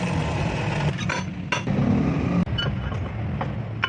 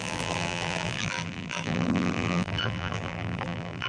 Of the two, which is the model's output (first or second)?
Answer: second